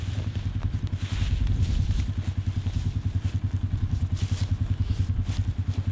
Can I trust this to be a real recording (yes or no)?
yes